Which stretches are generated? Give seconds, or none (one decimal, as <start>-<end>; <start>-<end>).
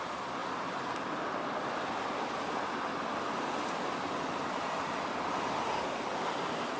none